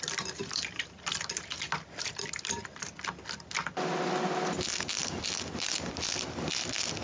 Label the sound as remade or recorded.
recorded